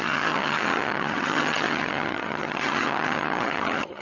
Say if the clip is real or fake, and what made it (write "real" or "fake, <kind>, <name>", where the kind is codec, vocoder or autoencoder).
fake, vocoder, HiFi-GAN